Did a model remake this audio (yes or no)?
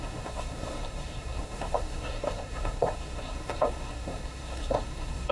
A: yes